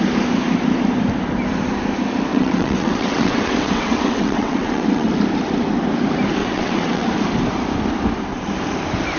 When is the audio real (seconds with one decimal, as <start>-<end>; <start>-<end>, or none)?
0.0-2.3; 5.1-6.4; 7.1-9.2